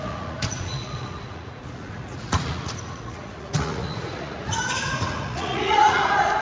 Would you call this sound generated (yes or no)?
yes